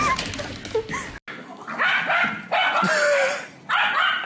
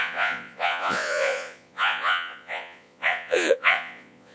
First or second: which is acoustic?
first